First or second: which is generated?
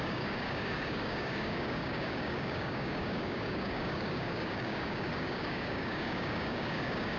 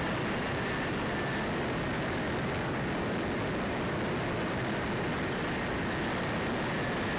first